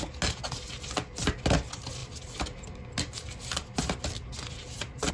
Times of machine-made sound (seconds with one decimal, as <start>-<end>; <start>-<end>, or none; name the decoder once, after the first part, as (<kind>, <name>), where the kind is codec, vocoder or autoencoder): none